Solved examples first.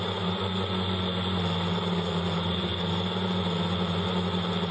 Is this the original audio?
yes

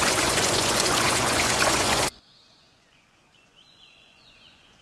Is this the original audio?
no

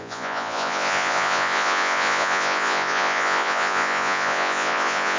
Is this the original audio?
no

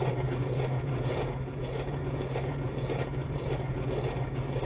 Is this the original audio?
no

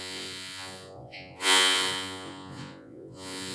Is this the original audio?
no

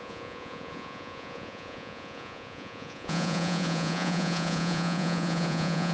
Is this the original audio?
no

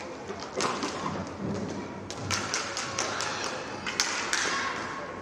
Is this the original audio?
yes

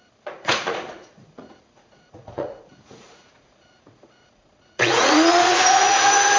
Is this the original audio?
no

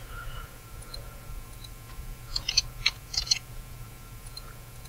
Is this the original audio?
no